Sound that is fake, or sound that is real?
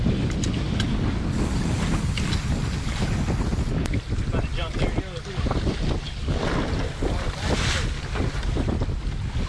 real